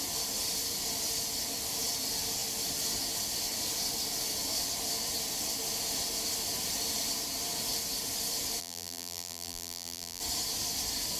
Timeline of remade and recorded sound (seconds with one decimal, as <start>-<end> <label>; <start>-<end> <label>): 0.0-8.6 recorded; 8.6-10.2 remade; 10.2-11.2 recorded